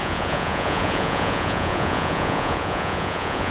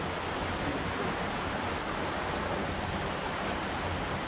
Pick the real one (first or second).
second